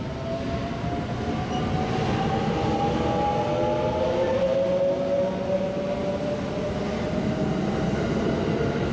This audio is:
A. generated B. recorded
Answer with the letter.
B